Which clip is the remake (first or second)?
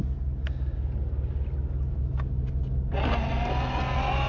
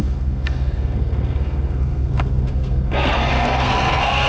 second